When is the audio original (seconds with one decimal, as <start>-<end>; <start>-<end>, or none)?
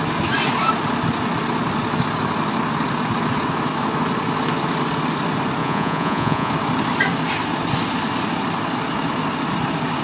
0.0-5.6; 6.5-10.0